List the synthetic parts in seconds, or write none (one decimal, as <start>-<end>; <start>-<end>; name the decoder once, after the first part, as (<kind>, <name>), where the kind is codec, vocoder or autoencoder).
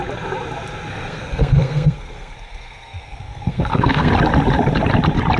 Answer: 0.9-4.1 (codec, SNAC)